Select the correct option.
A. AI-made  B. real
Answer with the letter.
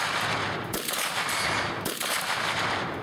B